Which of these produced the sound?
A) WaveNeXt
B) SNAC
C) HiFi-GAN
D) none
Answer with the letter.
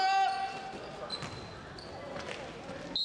D